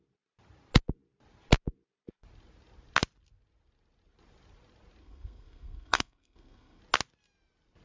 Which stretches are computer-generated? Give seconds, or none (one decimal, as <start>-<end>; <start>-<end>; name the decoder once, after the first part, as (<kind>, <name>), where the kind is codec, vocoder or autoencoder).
5.0-6.8 (codec, SNAC)